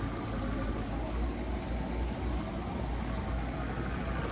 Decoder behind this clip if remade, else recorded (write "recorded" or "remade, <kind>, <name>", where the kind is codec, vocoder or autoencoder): recorded